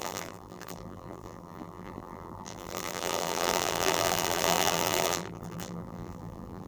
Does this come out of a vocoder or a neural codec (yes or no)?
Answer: yes